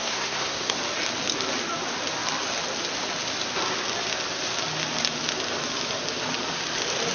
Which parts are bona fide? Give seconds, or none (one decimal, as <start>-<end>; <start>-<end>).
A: 0.8-7.1